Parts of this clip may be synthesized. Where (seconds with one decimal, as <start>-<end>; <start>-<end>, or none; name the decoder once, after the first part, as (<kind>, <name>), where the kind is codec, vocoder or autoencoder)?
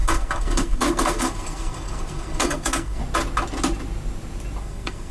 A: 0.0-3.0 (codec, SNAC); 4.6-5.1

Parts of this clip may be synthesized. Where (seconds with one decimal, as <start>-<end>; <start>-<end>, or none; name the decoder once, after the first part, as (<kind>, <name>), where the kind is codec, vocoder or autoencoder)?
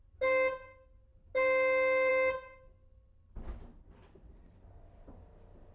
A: none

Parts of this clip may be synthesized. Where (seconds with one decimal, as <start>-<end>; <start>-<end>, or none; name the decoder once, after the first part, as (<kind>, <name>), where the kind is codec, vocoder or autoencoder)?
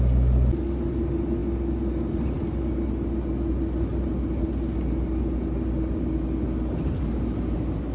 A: none